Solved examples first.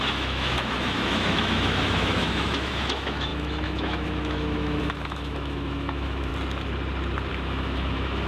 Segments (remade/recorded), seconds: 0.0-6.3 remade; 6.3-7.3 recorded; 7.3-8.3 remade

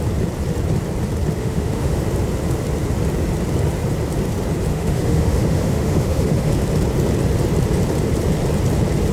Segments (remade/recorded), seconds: 0.0-1.4 recorded; 1.4-2.0 remade; 2.0-4.7 recorded; 4.7-6.5 remade; 6.5-9.1 recorded

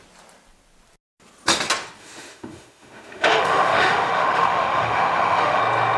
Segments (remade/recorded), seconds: 0.0-2.0 recorded; 2.0-5.6 remade; 5.6-6.0 recorded

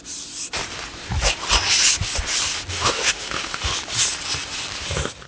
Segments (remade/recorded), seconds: 0.0-2.7 recorded; 2.7-3.7 remade; 3.7-5.3 recorded

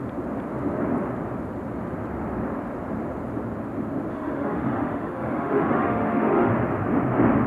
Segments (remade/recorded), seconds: 0.0-4.1 recorded; 4.1-6.5 remade; 6.5-7.5 recorded